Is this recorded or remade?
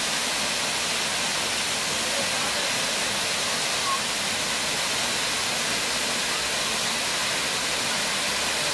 recorded